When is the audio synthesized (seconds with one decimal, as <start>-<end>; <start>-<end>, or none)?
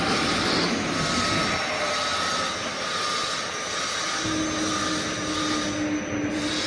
none